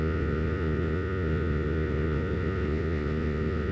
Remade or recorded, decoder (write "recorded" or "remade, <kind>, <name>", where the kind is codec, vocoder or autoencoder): remade, vocoder, Vocos